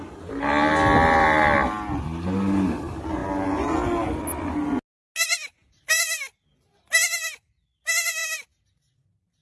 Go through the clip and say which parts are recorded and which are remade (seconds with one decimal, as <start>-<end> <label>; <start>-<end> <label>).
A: 0.0-9.4 recorded